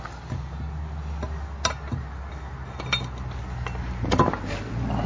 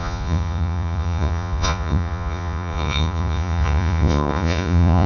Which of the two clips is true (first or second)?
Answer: first